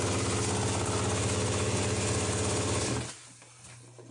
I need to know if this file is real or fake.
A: real